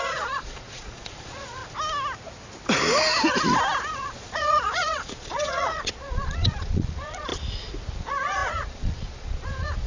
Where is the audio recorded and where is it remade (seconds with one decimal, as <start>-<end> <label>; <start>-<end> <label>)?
0.0-1.6 remade; 1.6-3.9 recorded; 3.9-7.3 remade; 7.3-8.0 recorded; 8.0-9.9 remade